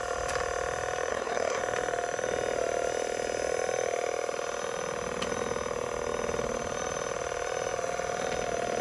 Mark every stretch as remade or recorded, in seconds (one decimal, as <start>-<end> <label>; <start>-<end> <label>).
0.0-1.1 recorded; 1.1-1.6 remade; 1.6-8.8 recorded